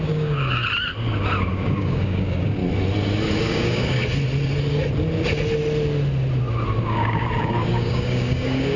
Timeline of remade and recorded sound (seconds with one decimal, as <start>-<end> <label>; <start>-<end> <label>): 0.0-0.6 remade; 0.6-1.5 recorded; 1.5-2.6 remade; 2.6-3.4 recorded; 3.4-4.0 remade; 4.0-6.8 recorded; 6.8-8.8 remade